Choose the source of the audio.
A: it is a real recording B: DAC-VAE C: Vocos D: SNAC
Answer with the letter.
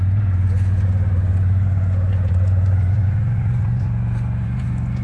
C